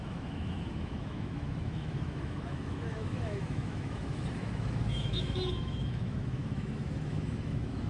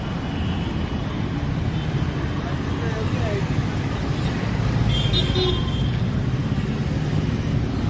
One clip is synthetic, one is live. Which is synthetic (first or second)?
first